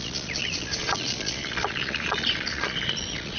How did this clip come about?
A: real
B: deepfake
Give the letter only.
B